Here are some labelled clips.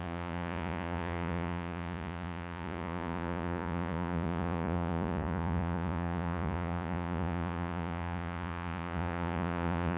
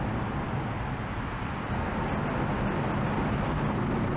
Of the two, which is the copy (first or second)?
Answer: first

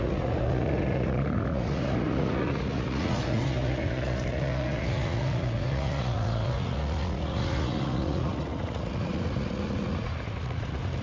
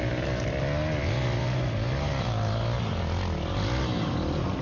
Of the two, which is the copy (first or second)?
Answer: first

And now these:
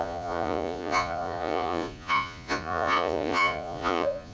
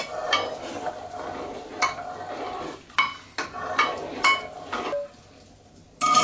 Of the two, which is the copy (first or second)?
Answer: first